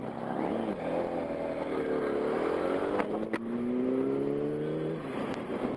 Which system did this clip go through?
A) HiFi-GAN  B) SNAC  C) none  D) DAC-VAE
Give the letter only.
C